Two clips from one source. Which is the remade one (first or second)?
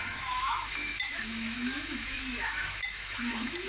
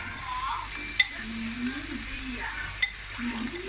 first